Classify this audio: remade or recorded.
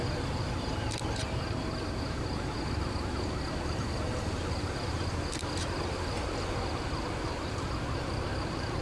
recorded